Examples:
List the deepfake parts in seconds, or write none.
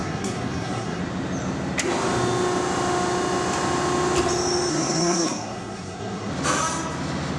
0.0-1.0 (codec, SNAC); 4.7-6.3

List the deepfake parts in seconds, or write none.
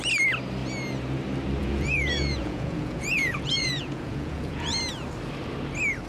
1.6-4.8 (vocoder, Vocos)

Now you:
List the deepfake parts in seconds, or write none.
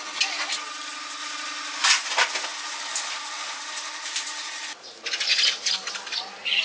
1.2-1.9 (vocoder, BigVGAN v2); 2.5-3.2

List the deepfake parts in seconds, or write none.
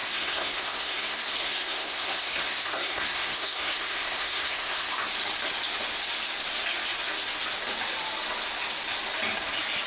0.0-4.9 (codec, SNAC)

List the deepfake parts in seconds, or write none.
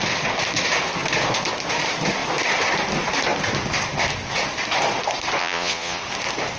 5.4-6.0 (vocoder, Vocos)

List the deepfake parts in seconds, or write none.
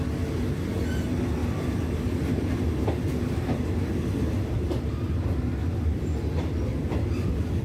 none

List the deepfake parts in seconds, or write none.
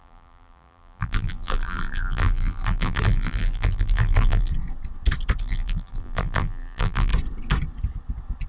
0.0-4.5 (vocoder, BigVGAN v2); 5.4-7.1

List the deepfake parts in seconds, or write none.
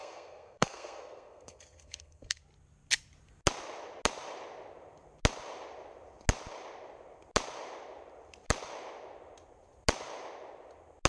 0.0-2.4 (codec, SNAC)